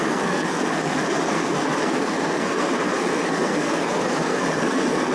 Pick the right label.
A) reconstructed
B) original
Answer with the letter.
A